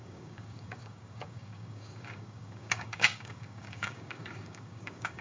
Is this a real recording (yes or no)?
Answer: no